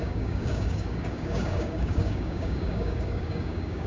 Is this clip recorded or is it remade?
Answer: remade